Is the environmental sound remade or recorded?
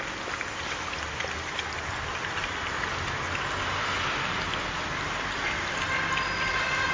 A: recorded